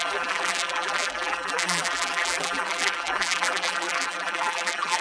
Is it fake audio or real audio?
fake